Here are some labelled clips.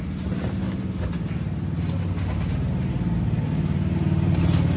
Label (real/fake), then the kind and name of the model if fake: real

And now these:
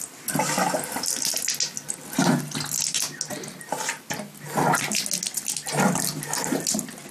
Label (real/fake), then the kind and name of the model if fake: real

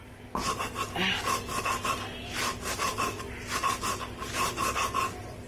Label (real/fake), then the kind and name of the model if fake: real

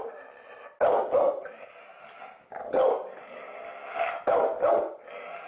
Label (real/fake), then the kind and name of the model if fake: real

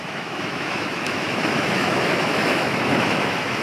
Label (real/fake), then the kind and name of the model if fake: fake, autoencoder, DAC-VAE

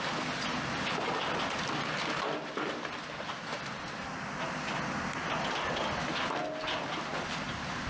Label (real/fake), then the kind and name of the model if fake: real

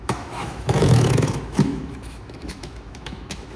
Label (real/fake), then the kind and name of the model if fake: fake, autoencoder, DAC-VAE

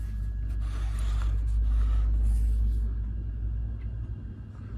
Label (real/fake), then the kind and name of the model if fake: real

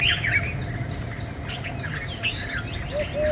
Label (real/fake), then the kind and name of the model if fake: real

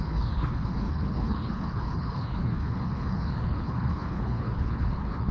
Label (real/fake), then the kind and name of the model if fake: fake, codec, HILCodec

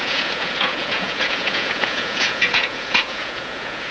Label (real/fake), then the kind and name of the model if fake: fake, vocoder, Vocos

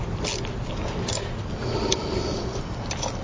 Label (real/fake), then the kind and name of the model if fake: real